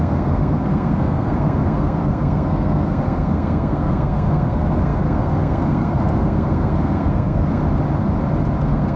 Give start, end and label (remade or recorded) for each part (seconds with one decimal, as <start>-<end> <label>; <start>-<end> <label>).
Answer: 0.0-7.6 remade; 7.6-8.6 recorded; 8.6-9.0 remade